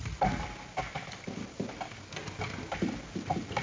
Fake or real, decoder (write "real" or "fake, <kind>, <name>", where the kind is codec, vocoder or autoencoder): real